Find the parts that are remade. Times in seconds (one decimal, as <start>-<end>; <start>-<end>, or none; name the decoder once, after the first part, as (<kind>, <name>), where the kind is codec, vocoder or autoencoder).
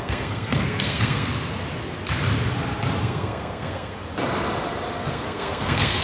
0.0-1.3 (codec, SNAC); 3.0-4.0; 4.9-6.0